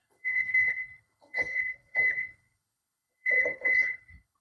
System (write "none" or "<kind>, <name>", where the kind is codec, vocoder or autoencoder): codec, HILCodec